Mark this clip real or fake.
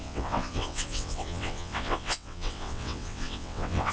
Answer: fake